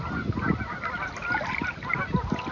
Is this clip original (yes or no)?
yes